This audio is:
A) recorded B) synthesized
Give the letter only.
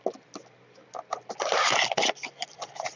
A